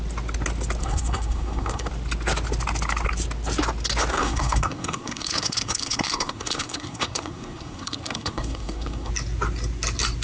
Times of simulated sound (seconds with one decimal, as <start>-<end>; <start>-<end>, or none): 0.8-1.9; 4.1-9.1